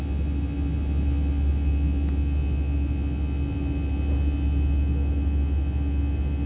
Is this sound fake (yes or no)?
no